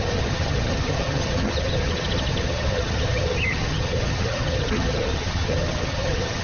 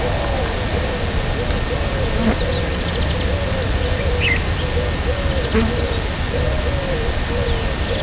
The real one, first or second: second